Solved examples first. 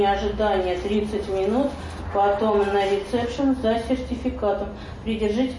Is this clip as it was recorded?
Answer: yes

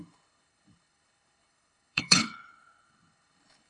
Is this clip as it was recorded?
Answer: no